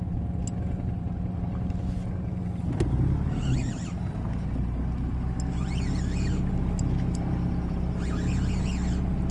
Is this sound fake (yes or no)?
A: no